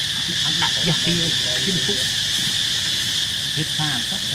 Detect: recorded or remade recorded